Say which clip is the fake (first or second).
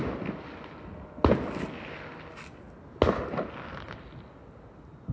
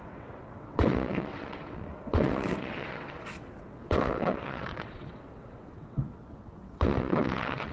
second